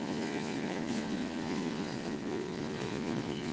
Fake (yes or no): yes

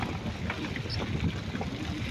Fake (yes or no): no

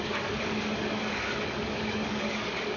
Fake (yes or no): yes